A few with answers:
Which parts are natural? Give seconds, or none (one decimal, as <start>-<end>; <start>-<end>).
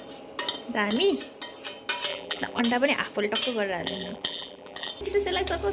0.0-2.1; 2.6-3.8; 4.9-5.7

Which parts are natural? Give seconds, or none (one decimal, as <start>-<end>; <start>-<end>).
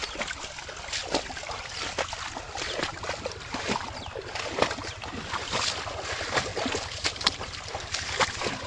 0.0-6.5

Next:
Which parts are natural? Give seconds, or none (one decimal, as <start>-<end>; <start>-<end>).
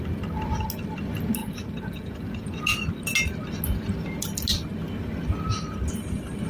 0.0-1.4; 2.6-6.5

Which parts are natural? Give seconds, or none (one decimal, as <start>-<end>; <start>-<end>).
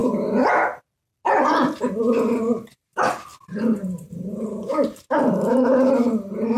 0.0-3.3; 4.3-6.6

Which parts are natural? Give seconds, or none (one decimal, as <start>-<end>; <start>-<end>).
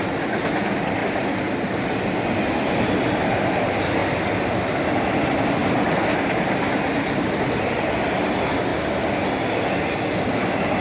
4.0-4.5; 5.6-6.7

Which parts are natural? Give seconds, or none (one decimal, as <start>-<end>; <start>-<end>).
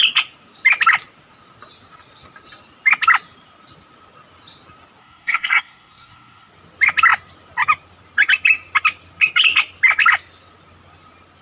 0.0-5.0; 6.5-11.4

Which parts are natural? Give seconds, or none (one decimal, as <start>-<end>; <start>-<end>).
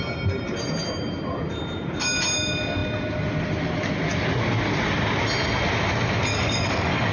0.0-6.3